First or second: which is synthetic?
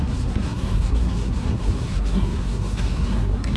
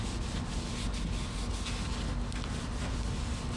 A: first